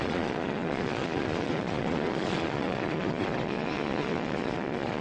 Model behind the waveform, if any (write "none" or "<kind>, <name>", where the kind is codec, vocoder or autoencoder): vocoder, Vocos